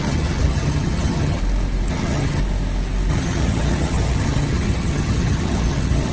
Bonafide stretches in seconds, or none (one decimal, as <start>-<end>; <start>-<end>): 1.4-1.9; 2.4-3.1

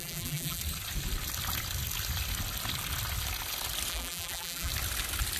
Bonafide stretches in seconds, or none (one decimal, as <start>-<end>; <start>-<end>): 0.6-3.9; 4.7-5.4